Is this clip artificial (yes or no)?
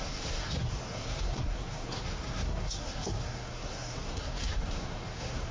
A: yes